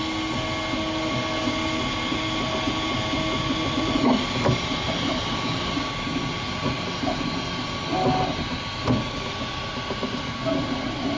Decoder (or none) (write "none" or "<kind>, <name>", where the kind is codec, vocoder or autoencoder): none